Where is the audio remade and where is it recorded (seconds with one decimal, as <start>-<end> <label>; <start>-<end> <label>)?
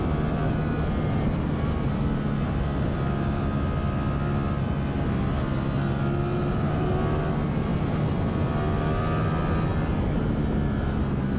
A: 0.0-6.3 recorded; 6.3-6.9 remade; 6.9-11.4 recorded